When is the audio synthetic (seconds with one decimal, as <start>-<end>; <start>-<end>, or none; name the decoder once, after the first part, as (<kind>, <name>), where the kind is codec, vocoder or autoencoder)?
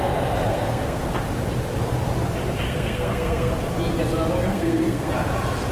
0.5-1.0 (codec, SNAC); 2.7-3.5; 4.5-5.1